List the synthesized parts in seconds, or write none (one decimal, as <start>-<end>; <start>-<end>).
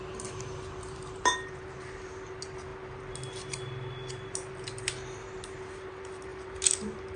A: none